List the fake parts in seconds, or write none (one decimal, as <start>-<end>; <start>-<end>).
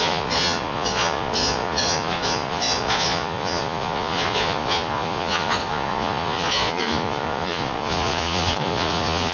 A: 0.0-9.3